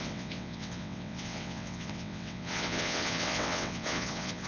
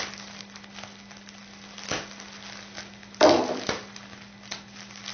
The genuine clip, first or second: second